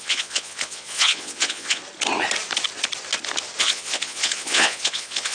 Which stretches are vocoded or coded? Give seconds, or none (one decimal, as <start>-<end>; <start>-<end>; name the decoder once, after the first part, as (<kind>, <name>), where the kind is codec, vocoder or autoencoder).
0.0-1.8 (vocoder, Vocos); 3.6-5.3